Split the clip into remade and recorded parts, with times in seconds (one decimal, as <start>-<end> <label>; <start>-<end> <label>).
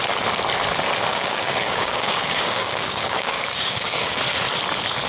0.0-1.1 recorded; 1.1-4.2 remade; 4.2-5.1 recorded